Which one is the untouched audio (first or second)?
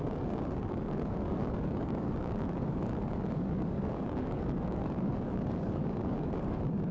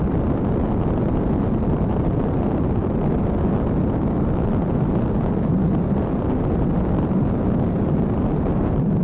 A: second